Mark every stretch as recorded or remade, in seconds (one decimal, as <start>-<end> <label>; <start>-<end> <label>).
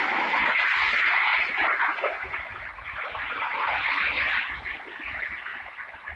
0.0-6.2 recorded